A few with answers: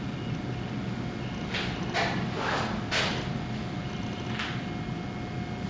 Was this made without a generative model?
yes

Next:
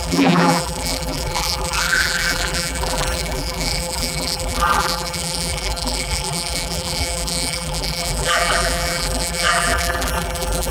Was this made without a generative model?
no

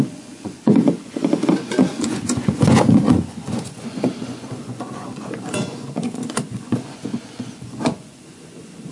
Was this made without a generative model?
no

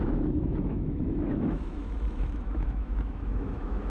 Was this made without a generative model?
no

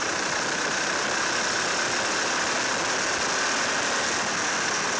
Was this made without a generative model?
yes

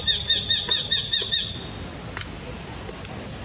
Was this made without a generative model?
yes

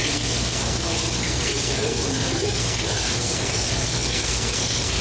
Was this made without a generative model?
no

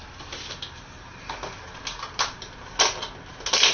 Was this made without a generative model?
yes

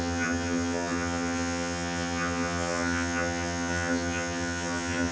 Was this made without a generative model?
no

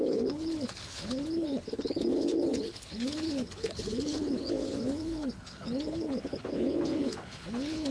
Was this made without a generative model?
no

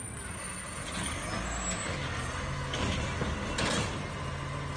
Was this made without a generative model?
yes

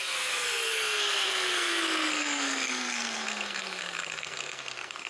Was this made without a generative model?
no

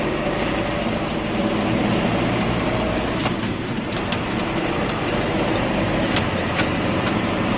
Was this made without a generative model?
no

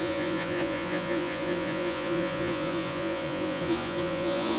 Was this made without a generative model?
no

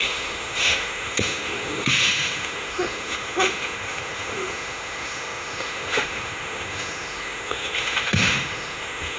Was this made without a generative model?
no